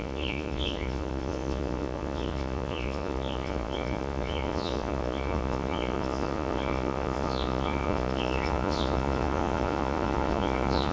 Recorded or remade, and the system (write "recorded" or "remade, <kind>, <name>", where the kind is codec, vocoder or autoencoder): remade, vocoder, Vocos